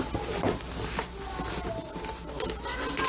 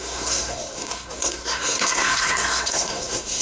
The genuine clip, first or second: first